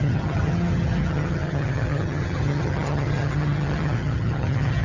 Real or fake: fake